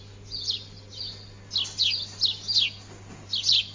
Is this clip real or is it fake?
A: real